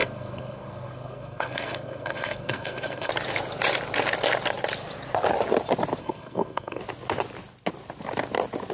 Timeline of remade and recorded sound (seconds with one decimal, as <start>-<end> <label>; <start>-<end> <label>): 0.0-3.1 remade; 3.1-6.0 recorded; 6.0-6.8 remade; 6.8-8.7 recorded

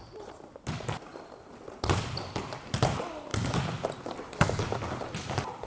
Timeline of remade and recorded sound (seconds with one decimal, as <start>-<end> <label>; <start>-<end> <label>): 0.0-5.7 recorded

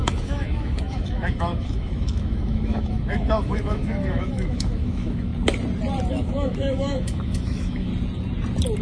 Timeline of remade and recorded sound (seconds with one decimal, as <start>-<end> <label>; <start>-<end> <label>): 0.0-5.3 remade; 5.3-6.1 recorded; 6.1-7.9 remade; 7.9-8.8 recorded

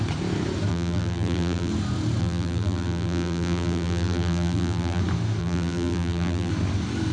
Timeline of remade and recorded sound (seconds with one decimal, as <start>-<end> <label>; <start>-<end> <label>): 0.0-0.7 recorded; 0.7-1.7 remade; 1.7-2.2 recorded; 2.2-5.0 remade; 5.0-5.4 recorded; 5.4-6.5 remade; 6.5-7.1 recorded

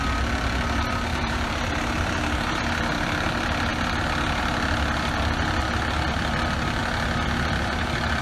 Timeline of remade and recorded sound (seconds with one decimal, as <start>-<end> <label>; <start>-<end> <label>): 0.0-1.1 recorded; 1.1-1.6 remade; 1.6-8.2 recorded

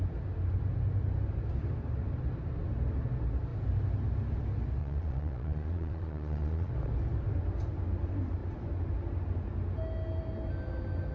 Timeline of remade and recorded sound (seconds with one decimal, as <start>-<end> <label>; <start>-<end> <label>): 0.0-4.8 recorded; 4.8-6.7 remade; 6.7-11.1 recorded

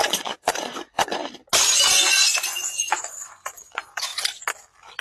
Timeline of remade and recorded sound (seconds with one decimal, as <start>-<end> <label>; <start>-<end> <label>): 0.0-1.2 remade; 1.2-1.9 recorded; 1.9-4.1 remade; 4.1-5.0 recorded

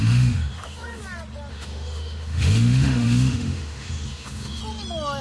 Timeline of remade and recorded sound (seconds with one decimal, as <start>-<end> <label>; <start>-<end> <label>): 0.0-1.0 remade; 1.0-1.5 recorded; 1.5-4.6 remade; 4.6-5.2 recorded